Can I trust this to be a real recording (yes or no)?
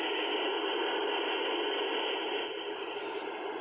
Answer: yes